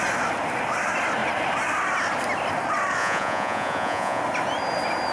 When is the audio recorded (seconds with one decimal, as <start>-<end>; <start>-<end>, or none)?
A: 0.0-3.0; 4.2-5.1